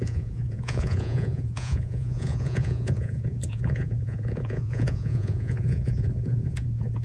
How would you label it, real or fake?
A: fake